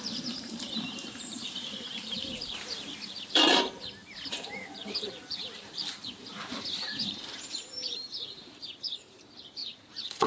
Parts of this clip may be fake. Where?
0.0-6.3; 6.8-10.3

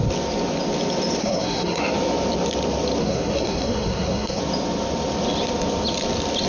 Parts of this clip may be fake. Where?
1.2-1.8; 3.0-4.4

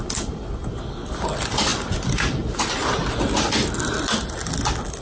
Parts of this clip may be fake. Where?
none

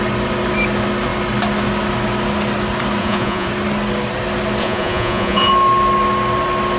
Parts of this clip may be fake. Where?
3.0-3.5; 4.6-5.5

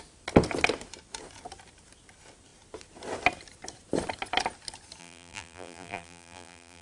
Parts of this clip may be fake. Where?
5.0-6.8

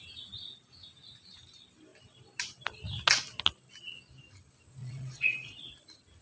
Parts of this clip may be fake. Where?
4.8-5.7

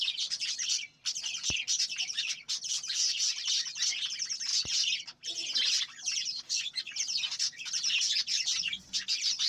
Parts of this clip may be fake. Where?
none

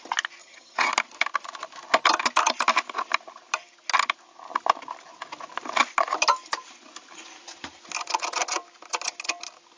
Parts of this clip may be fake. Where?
0.4-0.9